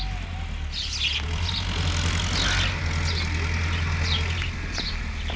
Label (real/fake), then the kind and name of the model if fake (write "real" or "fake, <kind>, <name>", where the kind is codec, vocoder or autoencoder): real